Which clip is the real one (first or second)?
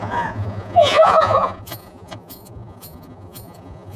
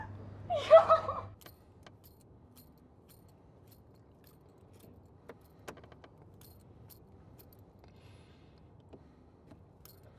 second